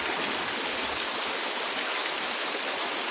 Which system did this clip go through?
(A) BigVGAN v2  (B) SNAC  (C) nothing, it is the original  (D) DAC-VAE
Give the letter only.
C